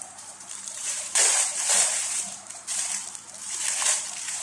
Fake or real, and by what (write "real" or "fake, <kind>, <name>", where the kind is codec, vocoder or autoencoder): fake, vocoder, BigVGAN v2